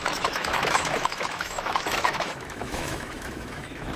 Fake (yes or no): yes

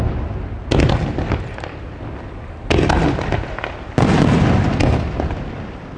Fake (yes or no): no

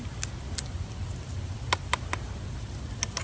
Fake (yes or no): no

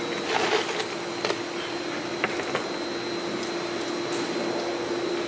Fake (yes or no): no